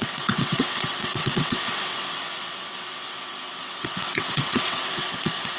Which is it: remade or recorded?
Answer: remade